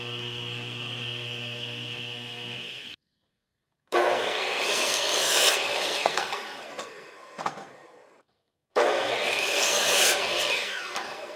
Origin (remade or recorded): remade